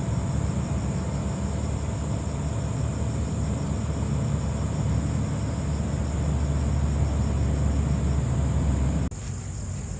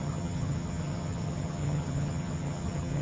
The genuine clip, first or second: first